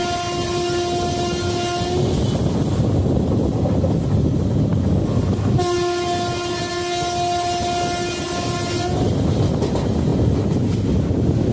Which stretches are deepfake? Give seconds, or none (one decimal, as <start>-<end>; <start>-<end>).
none